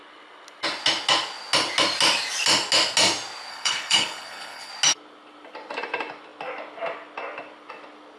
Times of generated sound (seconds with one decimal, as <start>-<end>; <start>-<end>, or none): 3.5-4.7

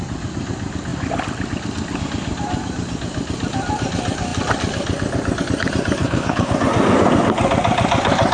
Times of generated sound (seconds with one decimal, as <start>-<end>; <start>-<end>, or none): 6.0-6.5

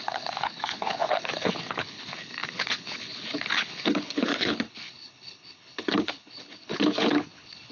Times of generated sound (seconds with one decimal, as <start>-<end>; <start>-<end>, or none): 0.0-7.7

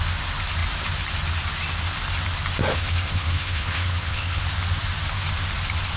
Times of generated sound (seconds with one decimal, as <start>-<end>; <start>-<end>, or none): 2.7-4.4